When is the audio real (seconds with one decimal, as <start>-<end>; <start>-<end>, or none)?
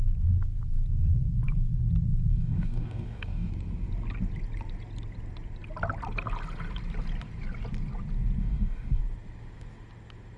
0.0-2.3; 3.5-8.4; 9.0-10.4